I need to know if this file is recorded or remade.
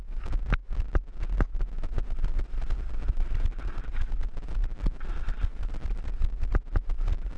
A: recorded